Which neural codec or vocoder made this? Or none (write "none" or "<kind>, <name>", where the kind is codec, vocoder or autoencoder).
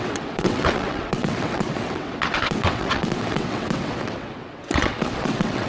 vocoder, WaveNeXt